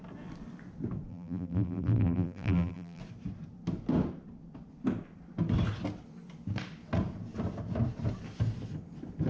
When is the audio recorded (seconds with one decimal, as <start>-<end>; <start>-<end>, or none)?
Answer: 0.0-1.1; 3.0-9.3